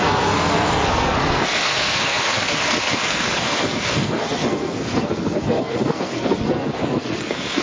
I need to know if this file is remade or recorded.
remade